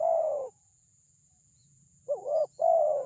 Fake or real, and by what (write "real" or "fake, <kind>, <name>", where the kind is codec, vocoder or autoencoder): fake, vocoder, BigVGAN v2